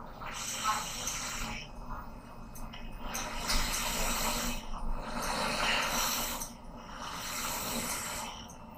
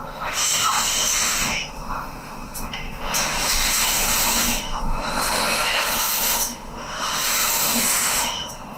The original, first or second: first